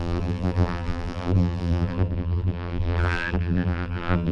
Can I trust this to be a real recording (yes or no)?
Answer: no